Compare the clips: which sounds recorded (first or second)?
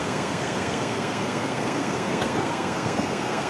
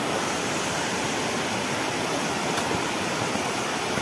second